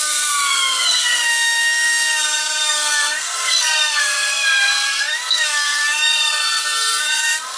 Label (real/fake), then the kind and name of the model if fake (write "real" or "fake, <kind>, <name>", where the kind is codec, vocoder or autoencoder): fake, codec, SNAC